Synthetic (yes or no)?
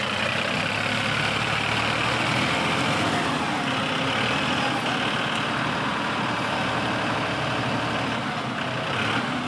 no